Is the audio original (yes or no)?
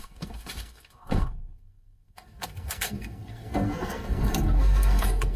no